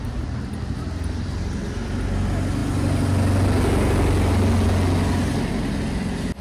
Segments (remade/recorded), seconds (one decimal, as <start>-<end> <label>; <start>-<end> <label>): 0.0-6.4 recorded